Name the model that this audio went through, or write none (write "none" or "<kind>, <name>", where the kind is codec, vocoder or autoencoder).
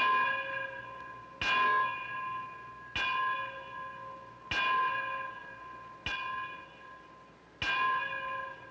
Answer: none